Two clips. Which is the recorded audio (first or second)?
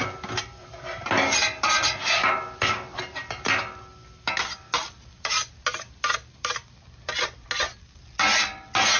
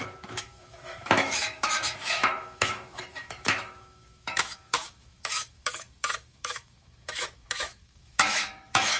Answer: first